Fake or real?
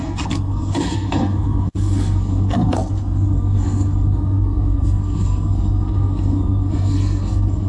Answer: fake